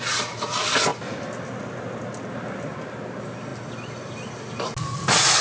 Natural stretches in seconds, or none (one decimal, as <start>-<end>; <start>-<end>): 0.0-5.4